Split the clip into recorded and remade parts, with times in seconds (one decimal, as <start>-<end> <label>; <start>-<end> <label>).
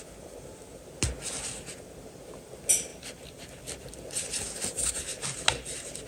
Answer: 0.0-6.1 recorded